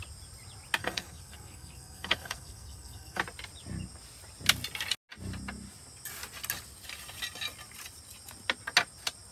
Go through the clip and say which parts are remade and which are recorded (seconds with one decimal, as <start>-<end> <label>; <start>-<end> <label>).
0.0-0.8 recorded; 0.8-3.2 remade; 3.2-9.3 recorded